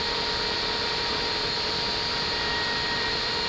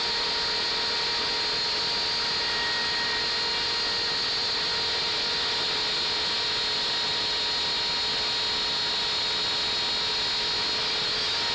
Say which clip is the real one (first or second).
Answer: second